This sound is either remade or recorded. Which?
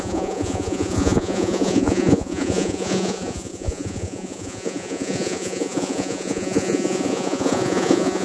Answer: remade